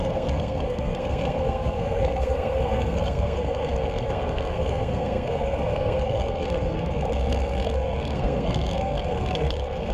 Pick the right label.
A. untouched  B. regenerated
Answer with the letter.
B